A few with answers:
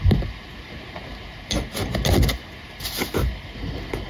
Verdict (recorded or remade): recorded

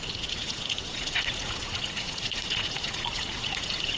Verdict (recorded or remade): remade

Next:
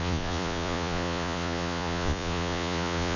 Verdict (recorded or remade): remade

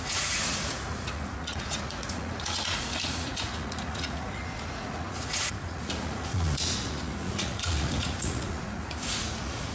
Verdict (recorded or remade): remade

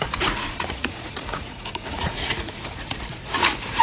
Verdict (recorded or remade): remade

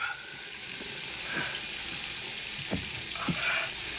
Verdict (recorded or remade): recorded